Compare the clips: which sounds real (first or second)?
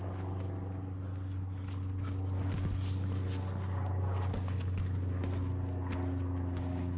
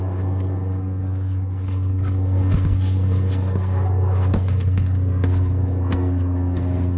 first